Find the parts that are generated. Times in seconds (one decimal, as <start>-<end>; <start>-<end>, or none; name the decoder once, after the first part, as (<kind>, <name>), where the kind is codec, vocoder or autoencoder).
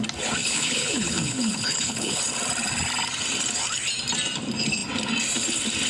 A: 0.4-2.2 (codec, HILCodec)